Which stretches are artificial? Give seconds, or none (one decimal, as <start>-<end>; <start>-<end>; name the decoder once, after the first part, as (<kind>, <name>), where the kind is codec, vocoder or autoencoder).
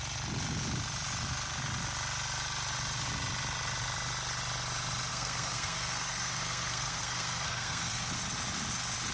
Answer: 5.1-8.1 (codec, SNAC)